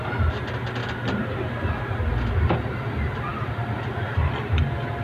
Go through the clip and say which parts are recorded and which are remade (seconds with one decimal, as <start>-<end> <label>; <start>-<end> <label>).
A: 0.0-0.8 recorded; 0.8-1.5 remade; 1.5-5.0 recorded